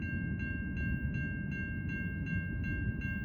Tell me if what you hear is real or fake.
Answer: real